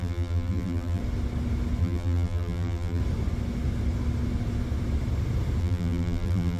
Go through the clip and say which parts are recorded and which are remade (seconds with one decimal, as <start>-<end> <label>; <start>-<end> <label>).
0.0-1.0 remade; 1.0-1.8 recorded; 1.8-3.0 remade; 3.0-5.6 recorded; 5.6-6.6 remade